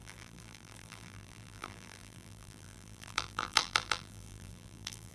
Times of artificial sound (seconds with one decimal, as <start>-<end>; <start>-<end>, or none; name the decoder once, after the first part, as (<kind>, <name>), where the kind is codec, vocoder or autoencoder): 0.0-5.1 (vocoder, BigVGAN v2)